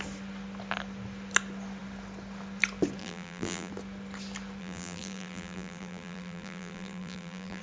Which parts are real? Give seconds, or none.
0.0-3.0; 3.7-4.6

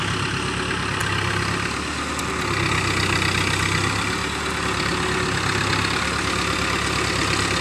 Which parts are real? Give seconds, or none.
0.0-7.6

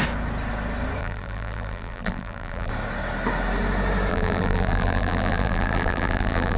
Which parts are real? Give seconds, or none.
0.0-1.0; 2.7-4.1

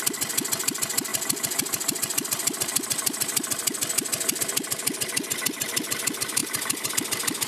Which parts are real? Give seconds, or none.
0.0-1.1; 4.4-6.4; 6.9-7.5

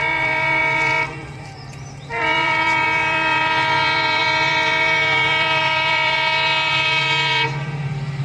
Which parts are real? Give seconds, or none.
none